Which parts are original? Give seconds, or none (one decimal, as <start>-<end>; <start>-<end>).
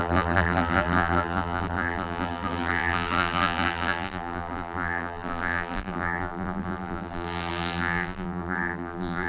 none